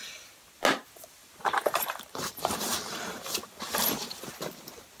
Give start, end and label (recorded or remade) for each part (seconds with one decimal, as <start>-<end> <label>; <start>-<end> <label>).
0.0-1.2 recorded; 1.2-4.2 remade; 4.2-5.0 recorded